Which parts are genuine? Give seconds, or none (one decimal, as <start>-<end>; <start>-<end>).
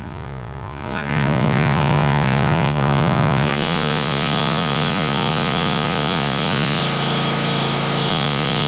6.8-8.1